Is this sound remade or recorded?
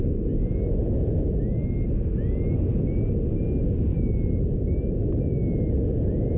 recorded